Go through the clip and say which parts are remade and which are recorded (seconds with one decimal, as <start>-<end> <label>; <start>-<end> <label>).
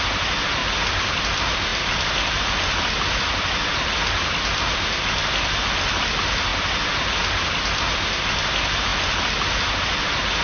0.0-0.6 recorded; 0.6-1.2 remade; 1.2-1.7 recorded; 1.7-4.1 remade; 4.1-6.5 recorded; 6.5-7.2 remade; 7.2-10.4 recorded